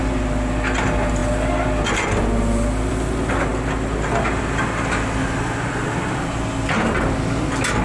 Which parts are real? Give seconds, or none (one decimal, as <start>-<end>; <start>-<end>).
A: 0.0-7.8